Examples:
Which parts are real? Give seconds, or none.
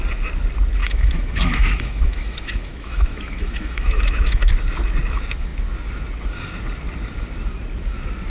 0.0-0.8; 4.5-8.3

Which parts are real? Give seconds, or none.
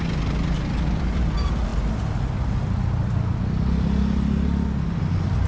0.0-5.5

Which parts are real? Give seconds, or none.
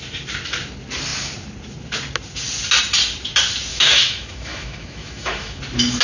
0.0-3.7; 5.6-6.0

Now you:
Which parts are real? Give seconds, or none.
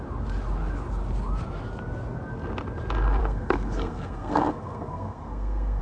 0.0-3.2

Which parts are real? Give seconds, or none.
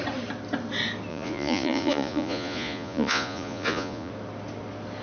0.0-1.1; 4.1-5.0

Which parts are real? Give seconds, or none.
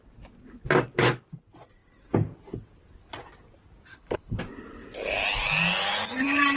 0.0-3.9; 4.4-6.6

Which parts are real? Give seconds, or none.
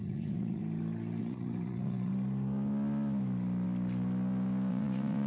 0.6-1.2; 2.1-4.7